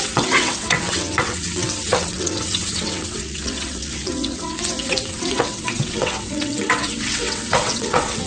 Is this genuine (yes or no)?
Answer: no